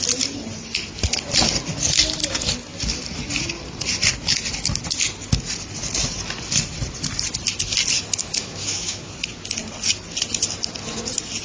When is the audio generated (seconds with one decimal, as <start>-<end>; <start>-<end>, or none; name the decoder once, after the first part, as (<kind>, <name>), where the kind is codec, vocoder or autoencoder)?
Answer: 8.2-9.1 (autoencoder, DAC-VAE)